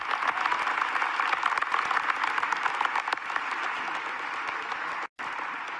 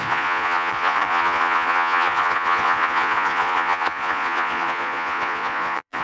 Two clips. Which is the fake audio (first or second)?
second